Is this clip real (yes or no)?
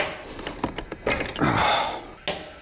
yes